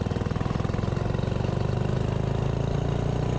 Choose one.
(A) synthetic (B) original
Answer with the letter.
B